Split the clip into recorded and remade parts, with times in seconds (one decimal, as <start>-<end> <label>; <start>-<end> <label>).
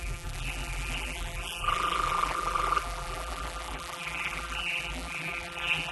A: 0.0-5.9 remade